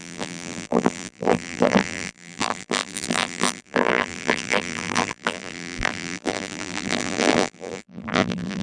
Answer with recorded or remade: remade